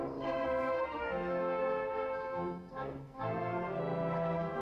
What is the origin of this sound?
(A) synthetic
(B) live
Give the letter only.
A